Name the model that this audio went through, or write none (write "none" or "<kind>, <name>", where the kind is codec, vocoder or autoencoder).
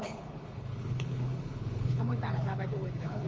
codec, HILCodec